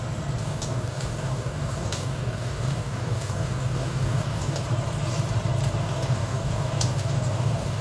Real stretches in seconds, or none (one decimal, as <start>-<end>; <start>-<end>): 0.0-0.4; 4.6-5.8